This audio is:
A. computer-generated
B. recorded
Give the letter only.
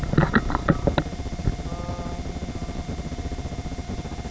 B